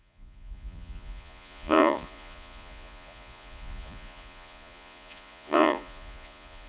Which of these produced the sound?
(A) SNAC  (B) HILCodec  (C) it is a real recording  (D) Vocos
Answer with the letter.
D